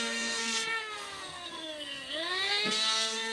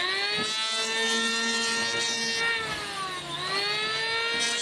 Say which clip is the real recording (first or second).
second